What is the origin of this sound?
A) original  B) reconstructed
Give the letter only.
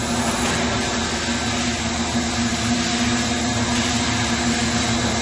A